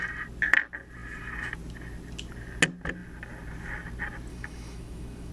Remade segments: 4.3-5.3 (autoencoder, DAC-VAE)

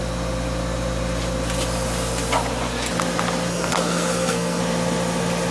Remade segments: 3.5-4.6 (codec, SNAC)

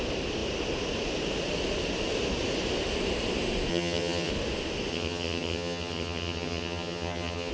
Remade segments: 3.7-4.3 (vocoder, HiFi-GAN); 4.9-7.5